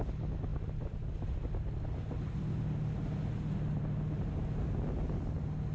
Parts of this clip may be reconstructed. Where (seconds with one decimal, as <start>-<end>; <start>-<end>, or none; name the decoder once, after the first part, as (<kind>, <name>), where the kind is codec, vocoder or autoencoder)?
none